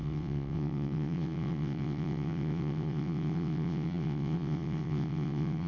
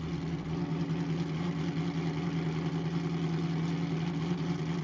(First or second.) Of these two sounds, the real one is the second